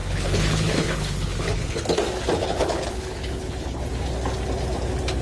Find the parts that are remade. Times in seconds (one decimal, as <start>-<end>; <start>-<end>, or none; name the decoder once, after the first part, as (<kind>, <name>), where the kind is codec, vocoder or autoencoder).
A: 0.0-1.8 (codec, HILCodec); 2.3-3.8